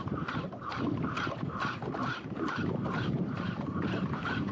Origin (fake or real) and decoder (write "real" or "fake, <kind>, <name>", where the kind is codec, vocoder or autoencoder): fake, vocoder, BigVGAN v2